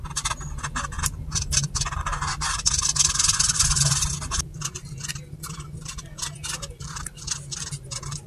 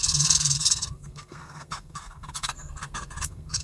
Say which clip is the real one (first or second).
first